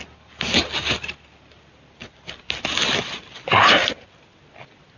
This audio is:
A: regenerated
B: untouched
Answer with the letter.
B